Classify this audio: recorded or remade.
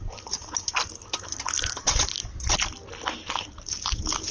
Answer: recorded